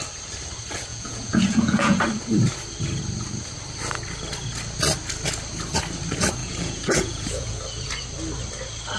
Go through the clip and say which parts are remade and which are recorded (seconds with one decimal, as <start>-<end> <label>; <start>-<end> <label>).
0.0-0.9 recorded; 0.9-2.0 remade; 2.0-6.4 recorded; 6.4-7.6 remade; 7.6-9.0 recorded

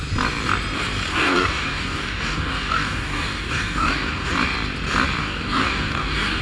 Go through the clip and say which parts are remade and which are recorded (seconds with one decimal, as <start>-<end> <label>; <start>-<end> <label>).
0.0-1.1 recorded; 1.1-4.3 remade; 4.3-5.2 recorded; 5.2-6.4 remade

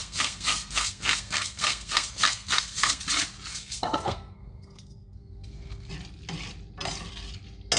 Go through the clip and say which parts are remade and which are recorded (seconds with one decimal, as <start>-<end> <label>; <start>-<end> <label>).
0.0-3.0 remade; 3.0-3.5 recorded; 3.5-5.9 remade; 5.9-7.8 recorded

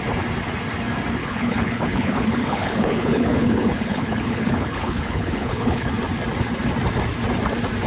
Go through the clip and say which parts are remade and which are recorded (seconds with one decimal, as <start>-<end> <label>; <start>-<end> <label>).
0.0-1.2 recorded; 1.2-5.9 remade; 5.9-7.9 recorded

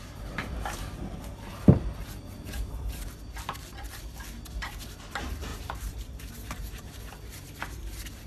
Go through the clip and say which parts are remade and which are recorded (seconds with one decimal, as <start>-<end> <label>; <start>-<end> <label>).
0.0-5.5 recorded; 5.5-7.6 remade; 7.6-8.3 recorded